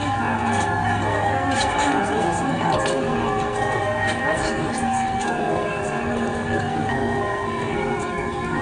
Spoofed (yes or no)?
yes